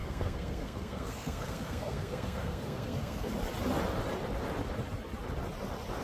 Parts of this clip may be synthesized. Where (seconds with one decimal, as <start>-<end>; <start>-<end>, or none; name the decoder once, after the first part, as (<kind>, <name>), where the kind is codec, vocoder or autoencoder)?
0.0-3.3 (codec, SNAC)